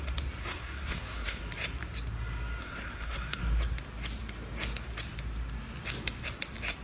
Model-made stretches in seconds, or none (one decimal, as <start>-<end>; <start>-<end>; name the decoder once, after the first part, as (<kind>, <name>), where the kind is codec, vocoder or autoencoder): 0.4-1.4 (codec, SNAC); 2.6-3.4